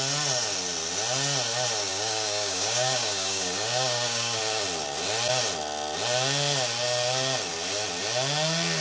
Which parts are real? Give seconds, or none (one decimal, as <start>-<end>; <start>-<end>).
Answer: 0.0-1.9; 4.4-8.8